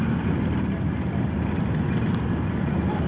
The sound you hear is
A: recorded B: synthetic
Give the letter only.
A